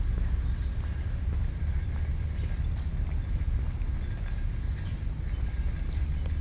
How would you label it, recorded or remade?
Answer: recorded